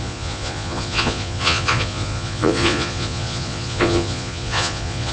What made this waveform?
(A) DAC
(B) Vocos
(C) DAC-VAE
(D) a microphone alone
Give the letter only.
B